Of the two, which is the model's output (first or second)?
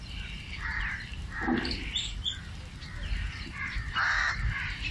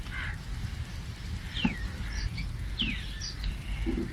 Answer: first